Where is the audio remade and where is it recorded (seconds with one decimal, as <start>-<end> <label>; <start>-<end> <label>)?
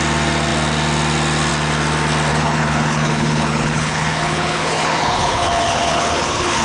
0.0-2.3 recorded; 2.3-6.6 remade